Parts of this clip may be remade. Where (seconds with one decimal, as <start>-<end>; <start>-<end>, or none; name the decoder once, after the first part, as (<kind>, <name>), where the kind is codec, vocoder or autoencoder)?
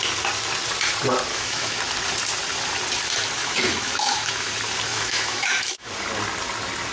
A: 1.3-1.8 (autoencoder, DAC-VAE); 3.4-4.5; 4.9-5.9